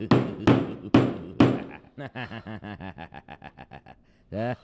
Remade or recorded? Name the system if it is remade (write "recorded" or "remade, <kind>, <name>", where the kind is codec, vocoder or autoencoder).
recorded